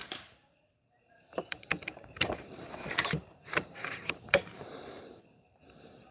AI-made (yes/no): yes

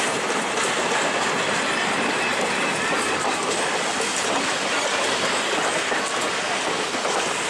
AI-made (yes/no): no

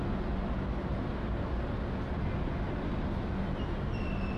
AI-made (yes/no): no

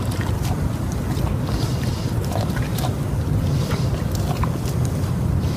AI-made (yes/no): yes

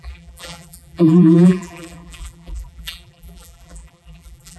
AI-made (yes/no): yes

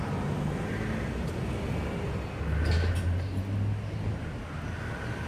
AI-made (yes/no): no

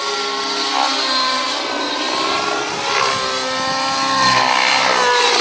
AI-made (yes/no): no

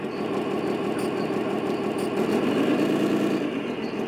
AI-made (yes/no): no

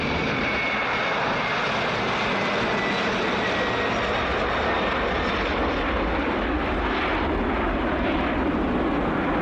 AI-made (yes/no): no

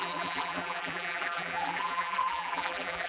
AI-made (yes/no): yes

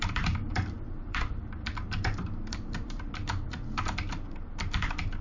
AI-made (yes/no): yes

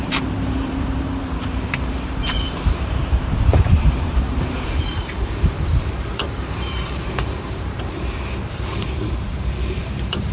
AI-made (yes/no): yes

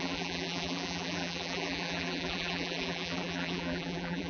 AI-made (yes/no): yes